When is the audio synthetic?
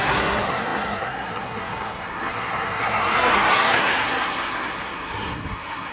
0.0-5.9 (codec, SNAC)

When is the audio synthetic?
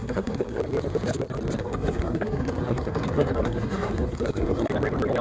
0.0-0.6 (codec, SNAC); 1.6-4.7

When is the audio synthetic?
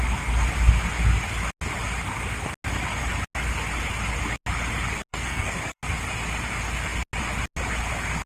5.1-5.8 (codec, SNAC)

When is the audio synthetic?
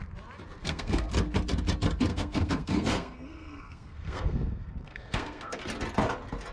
0.6-1.1 (codec, SNAC); 2.1-5.6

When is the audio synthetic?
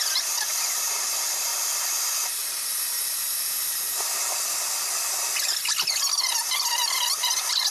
none